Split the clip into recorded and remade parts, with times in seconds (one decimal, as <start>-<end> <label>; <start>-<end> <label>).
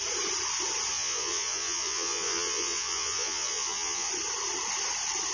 0.0-0.9 recorded; 0.9-4.1 remade; 4.1-5.3 recorded